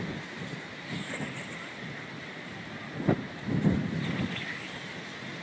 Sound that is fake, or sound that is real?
real